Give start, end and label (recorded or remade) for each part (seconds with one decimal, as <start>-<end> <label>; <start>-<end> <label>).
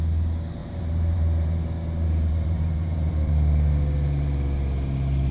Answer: 0.0-0.6 recorded; 0.6-3.3 remade; 3.3-5.3 recorded